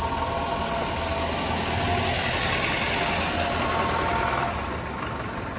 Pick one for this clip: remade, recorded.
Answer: recorded